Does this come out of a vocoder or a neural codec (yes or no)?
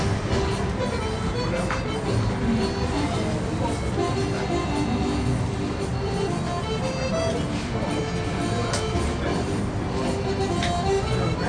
no